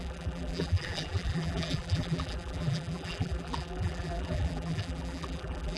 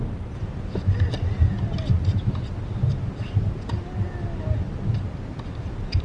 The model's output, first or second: first